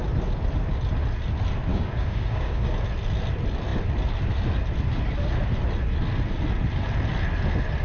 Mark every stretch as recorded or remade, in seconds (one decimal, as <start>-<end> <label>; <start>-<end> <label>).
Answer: 0.0-1.7 recorded; 1.7-2.7 remade; 2.7-7.8 recorded